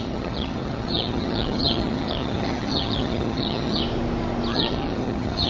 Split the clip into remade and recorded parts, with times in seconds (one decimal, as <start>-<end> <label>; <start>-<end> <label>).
0.0-3.8 remade; 3.8-4.5 recorded; 4.5-5.5 remade